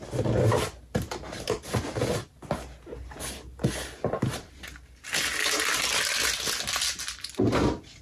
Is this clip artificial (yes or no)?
no